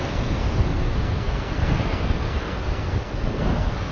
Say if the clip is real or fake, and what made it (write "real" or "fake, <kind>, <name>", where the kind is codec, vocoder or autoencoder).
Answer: fake, codec, SNAC